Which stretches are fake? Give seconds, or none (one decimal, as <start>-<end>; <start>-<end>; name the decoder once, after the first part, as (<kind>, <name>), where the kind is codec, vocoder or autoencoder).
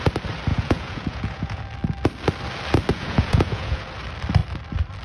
0.5-1.6 (vocoder, Vocos); 2.9-3.8